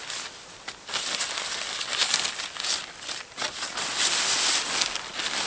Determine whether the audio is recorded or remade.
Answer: recorded